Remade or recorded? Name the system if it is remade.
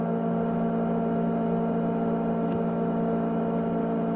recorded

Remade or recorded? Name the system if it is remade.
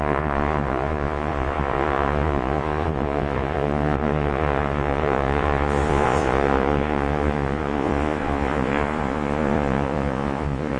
remade, vocoder, Vocos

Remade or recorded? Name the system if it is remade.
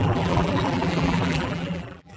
remade, vocoder, BigVGAN v2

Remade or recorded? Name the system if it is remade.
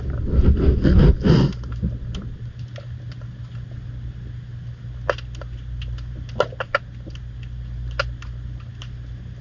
recorded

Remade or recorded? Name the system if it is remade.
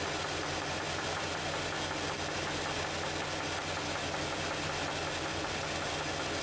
recorded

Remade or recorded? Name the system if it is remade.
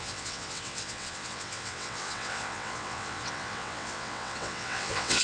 remade, vocoder, WaveNeXt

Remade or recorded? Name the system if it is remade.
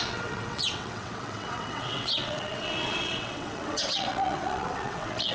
remade, vocoder, WaveNeXt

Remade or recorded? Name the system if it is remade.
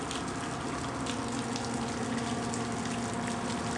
recorded